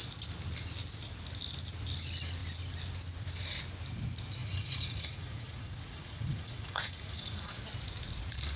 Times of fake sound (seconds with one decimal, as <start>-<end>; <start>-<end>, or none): 4.4-7.5